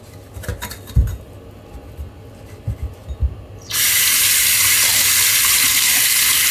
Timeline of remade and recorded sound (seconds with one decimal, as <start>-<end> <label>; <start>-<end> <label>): 0.0-6.5 recorded

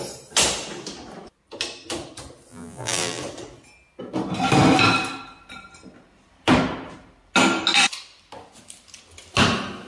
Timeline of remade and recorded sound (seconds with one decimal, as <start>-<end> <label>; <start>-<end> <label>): 0.0-2.5 recorded; 2.5-3.2 remade; 3.2-9.9 recorded

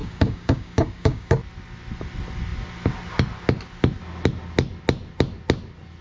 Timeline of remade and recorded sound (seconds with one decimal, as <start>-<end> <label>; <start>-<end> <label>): 0.0-1.3 remade; 1.3-6.0 recorded

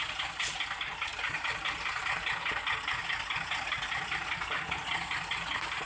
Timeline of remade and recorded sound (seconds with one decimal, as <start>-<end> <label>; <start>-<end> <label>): 0.0-5.9 recorded

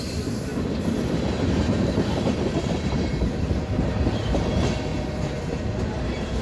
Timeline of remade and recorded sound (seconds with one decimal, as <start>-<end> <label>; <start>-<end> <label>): 0.0-0.5 remade; 0.5-1.5 recorded; 1.5-4.9 remade; 4.9-5.9 recorded; 5.9-6.4 remade

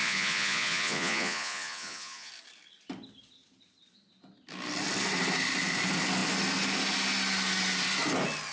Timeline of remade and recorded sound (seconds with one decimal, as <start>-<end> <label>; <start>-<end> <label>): 0.0-2.3 remade; 2.3-8.5 recorded

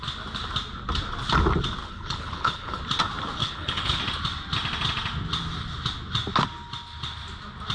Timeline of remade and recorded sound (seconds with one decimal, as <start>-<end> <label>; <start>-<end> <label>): 0.0-1.8 recorded; 1.8-2.8 remade; 2.8-3.4 recorded; 3.4-4.0 remade; 4.0-7.7 recorded

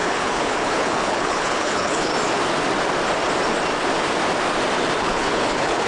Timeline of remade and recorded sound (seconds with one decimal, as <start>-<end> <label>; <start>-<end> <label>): 0.0-2.1 remade; 2.1-5.0 recorded; 5.0-5.9 remade